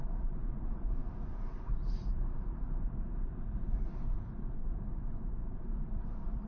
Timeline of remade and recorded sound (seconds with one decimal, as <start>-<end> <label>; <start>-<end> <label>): 0.0-6.5 remade

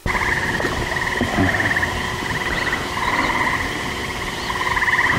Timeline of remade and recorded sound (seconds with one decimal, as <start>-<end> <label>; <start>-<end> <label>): 0.0-2.6 remade; 2.6-4.0 recorded; 4.0-4.7 remade; 4.7-5.2 recorded

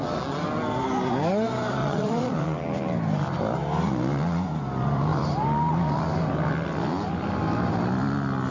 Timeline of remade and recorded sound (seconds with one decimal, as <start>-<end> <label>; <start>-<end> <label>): 0.0-1.8 recorded; 1.8-2.4 remade; 2.4-8.5 recorded

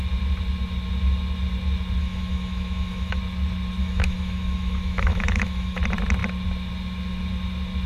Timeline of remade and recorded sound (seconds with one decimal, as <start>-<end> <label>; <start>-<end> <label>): 0.0-2.0 recorded; 2.0-3.2 remade; 3.2-3.8 recorded; 3.8-5.8 remade; 5.8-7.9 recorded

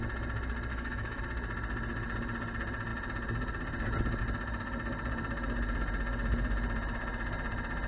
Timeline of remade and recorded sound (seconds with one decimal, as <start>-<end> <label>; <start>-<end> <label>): 0.0-0.7 recorded; 0.7-1.2 remade; 1.2-7.9 recorded